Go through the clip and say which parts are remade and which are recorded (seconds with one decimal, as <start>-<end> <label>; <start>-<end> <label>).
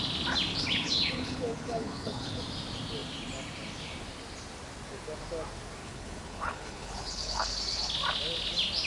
0.0-0.5 recorded; 0.5-2.4 remade; 2.4-5.8 recorded; 5.8-7.5 remade; 7.5-8.9 recorded